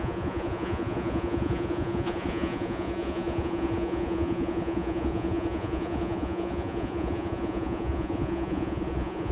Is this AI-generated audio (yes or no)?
yes